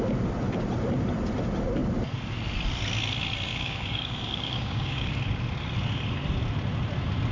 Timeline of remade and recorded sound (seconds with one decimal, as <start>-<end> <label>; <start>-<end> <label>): 0.0-3.5 recorded; 3.5-5.1 remade; 5.1-7.3 recorded

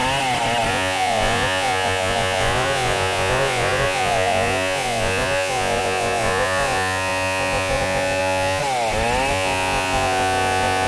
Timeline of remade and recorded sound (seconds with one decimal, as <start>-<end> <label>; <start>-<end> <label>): 0.0-0.7 recorded; 0.7-8.6 remade; 8.6-9.3 recorded; 9.3-10.9 remade

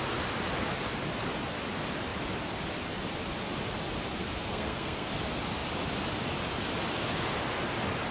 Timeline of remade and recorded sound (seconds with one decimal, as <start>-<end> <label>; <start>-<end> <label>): 0.0-4.2 recorded; 4.2-5.1 remade; 5.1-8.1 recorded

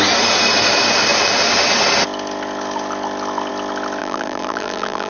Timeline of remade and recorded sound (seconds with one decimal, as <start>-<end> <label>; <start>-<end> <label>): 0.0-4.0 recorded; 4.0-5.1 remade

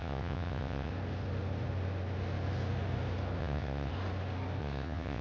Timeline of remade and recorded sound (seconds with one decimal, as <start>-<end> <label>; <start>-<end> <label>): 0.0-0.9 remade; 0.9-3.4 recorded; 3.4-3.9 remade; 3.9-4.6 recorded; 4.6-5.2 remade